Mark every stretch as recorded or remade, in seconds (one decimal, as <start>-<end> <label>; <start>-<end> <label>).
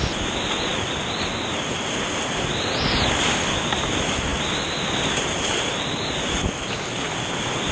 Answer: 0.0-7.7 recorded